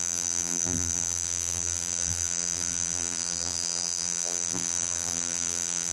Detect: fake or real fake